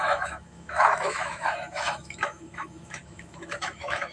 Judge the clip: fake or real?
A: fake